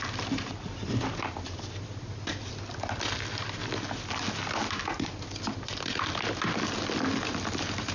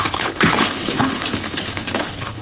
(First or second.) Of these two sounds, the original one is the first